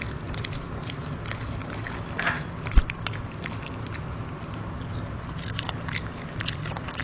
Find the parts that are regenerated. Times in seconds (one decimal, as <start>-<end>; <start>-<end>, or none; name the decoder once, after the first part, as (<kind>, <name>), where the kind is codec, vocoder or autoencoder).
none